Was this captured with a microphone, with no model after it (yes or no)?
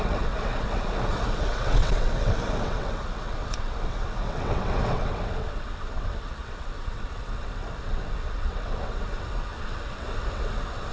no